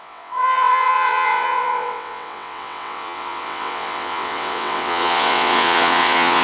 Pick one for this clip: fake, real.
fake